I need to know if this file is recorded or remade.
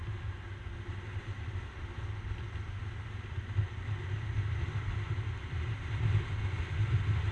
recorded